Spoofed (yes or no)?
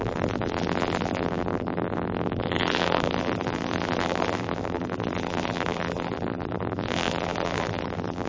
yes